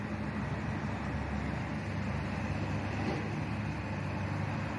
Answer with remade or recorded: recorded